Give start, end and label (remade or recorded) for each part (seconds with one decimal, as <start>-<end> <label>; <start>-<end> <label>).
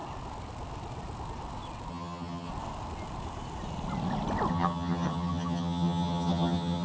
0.0-1.9 recorded; 1.9-2.5 remade; 2.5-4.5 recorded; 4.5-6.8 remade